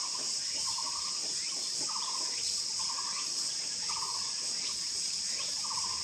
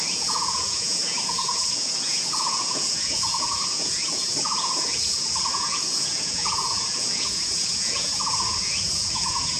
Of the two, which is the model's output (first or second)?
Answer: second